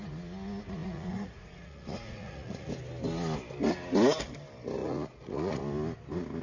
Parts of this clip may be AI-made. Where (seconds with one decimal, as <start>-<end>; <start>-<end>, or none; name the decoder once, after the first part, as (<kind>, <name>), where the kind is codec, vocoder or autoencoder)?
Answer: 0.8-2.7 (vocoder, Vocos); 4.8-5.6